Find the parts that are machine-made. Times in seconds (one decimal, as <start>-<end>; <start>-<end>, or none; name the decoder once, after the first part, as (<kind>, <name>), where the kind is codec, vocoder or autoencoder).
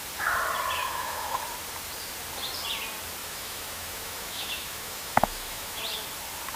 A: 0.8-1.4 (autoencoder, DAC-VAE); 3.2-5.8